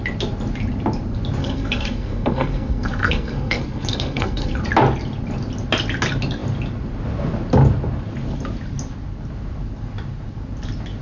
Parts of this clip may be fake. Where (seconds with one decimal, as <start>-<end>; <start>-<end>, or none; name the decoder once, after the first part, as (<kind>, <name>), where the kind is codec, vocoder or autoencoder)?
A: 1.4-4.6 (codec, SNAC)